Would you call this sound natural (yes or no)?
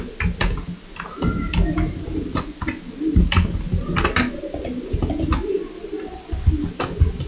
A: yes